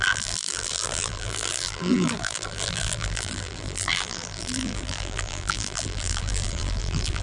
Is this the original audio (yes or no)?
no